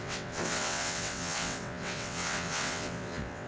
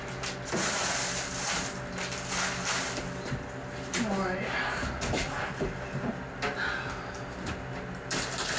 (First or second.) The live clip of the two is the second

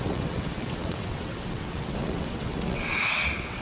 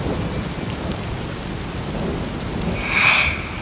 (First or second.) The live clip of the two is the second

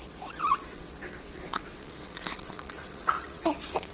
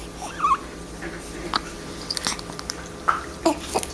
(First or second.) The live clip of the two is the second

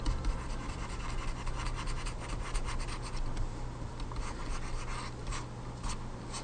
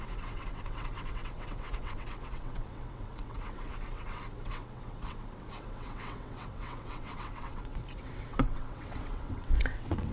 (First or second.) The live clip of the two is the first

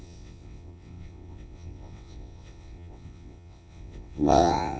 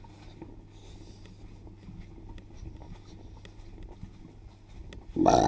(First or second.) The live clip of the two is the second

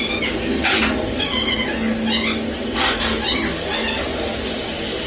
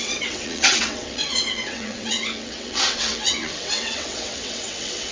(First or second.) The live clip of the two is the first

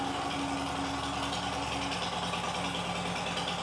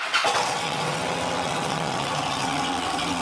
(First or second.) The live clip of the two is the first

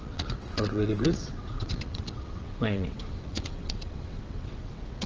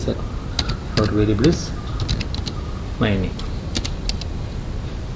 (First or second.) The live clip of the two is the second